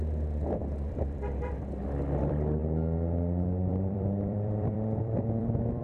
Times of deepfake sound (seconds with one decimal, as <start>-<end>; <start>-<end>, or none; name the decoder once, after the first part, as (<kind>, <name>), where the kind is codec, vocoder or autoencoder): 0.0-2.6 (vocoder, BigVGAN v2); 3.7-5.8